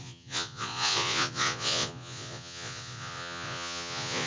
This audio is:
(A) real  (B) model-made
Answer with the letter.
B